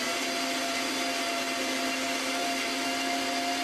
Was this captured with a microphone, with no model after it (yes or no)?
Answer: yes